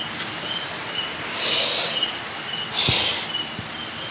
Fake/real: real